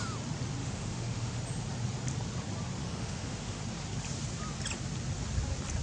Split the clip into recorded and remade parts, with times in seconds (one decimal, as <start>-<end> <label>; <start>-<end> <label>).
0.0-0.6 recorded; 0.6-1.4 remade; 1.4-2.8 recorded; 2.8-3.6 remade; 3.6-5.8 recorded